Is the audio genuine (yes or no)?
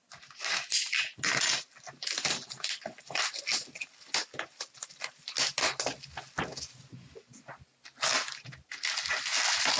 yes